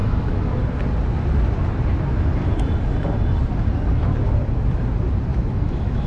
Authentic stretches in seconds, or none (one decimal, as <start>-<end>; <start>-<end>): 0.6-5.3

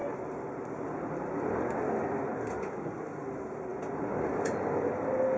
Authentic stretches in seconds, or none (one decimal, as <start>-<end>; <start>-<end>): 0.0-5.4